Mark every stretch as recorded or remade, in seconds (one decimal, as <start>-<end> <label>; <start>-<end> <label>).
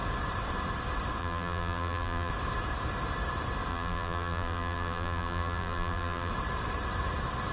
0.0-1.2 recorded; 1.2-2.3 remade; 2.3-3.7 recorded; 3.7-6.3 remade; 6.3-7.5 recorded